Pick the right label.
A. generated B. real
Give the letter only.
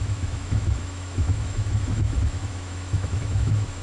A